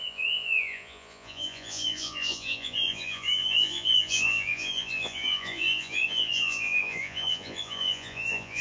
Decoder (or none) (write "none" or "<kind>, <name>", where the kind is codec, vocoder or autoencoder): vocoder, Vocos